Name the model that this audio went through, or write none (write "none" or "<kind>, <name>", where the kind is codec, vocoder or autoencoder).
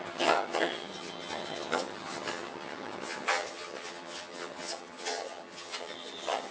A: vocoder, HiFi-GAN